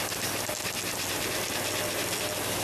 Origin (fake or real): real